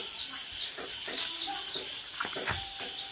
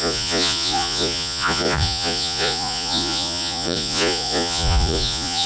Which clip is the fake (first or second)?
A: second